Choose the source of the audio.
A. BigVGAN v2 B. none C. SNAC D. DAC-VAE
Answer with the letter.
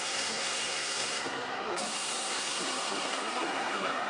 C